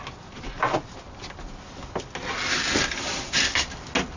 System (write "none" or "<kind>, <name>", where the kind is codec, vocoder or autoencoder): none